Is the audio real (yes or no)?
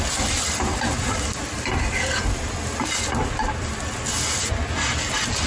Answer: yes